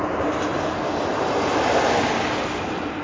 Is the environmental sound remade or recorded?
recorded